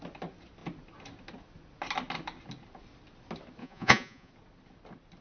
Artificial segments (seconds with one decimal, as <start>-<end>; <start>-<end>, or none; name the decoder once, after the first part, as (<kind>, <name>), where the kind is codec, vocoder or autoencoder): 3.6-4.3 (vocoder, Vocos)

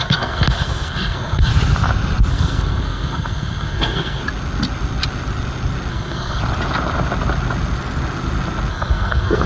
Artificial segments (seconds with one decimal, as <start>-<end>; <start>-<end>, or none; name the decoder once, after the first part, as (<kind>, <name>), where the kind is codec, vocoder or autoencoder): 0.0-1.5 (codec, SNAC); 2.3-4.2; 5.9-6.4; 8.7-9.5

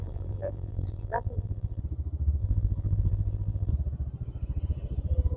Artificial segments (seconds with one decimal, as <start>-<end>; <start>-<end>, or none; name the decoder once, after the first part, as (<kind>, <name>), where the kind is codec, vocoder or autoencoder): 0.0-1.8 (vocoder, BigVGAN v2); 2.4-3.7

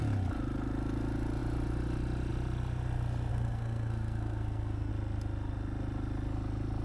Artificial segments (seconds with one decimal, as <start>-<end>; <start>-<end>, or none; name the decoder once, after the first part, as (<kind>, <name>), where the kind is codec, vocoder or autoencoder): 3.3-4.9 (codec, SNAC)

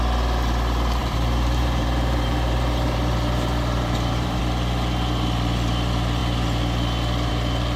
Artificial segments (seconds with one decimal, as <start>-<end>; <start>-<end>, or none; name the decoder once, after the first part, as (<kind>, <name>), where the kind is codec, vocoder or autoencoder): 1.0-4.4 (vocoder, BigVGAN v2)

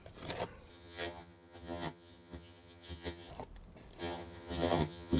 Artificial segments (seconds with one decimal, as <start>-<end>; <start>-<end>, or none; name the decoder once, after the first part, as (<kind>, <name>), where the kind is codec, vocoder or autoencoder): 0.7-3.3 (vocoder, HiFi-GAN); 4.0-5.2